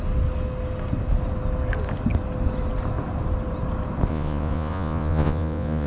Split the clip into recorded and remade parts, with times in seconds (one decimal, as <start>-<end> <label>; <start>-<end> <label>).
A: 0.0-4.1 recorded; 4.1-5.9 remade

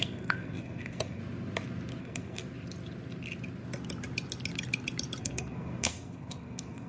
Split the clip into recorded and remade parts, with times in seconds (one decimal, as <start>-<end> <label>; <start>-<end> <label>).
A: 0.0-1.2 remade; 1.2-2.0 recorded; 2.0-2.4 remade; 2.4-5.2 recorded; 5.2-6.9 remade

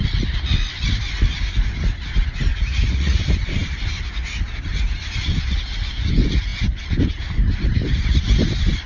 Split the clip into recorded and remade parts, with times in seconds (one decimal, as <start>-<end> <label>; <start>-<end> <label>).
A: 0.0-2.5 recorded; 2.5-3.2 remade; 3.2-8.9 recorded